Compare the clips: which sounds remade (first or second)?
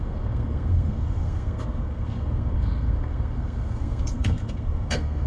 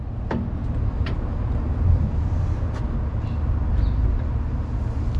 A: first